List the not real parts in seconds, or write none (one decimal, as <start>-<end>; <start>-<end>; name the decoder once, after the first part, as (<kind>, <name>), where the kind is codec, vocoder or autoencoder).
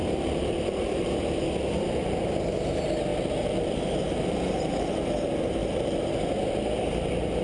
0.0-1.2 (vocoder, BigVGAN v2); 3.1-4.9; 5.6-6.1